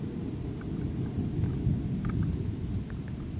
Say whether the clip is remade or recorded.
recorded